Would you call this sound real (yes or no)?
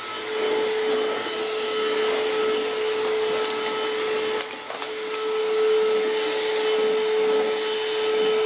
yes